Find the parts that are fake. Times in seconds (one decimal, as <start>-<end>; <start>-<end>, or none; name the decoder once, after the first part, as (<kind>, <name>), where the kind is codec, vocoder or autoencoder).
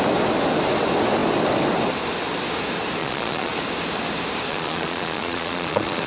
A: 3.0-3.5 (vocoder, Vocos); 4.5-6.1